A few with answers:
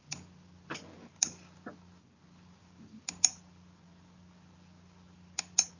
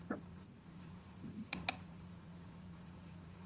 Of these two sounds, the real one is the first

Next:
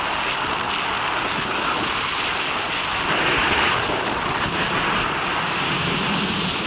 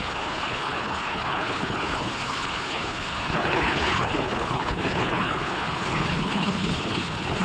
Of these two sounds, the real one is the first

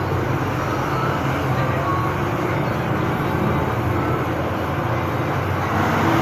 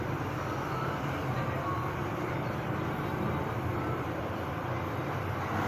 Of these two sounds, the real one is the first